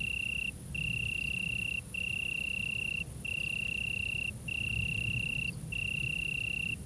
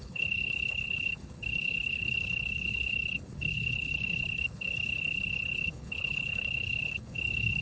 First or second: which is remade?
second